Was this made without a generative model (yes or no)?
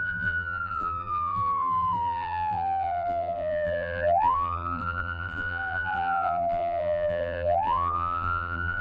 no